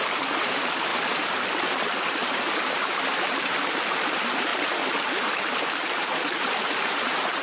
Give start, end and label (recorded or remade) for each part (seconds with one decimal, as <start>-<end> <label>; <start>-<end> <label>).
0.0-0.9 remade; 0.9-1.7 recorded; 1.7-7.4 remade